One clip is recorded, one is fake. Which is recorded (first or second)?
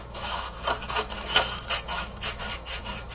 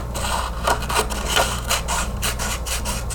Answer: second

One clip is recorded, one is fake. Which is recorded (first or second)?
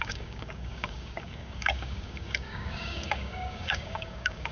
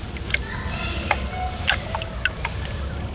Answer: second